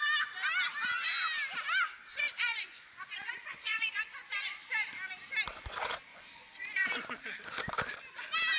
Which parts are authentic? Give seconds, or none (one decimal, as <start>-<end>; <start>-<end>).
0.0-2.0; 4.3-6.1; 6.9-8.6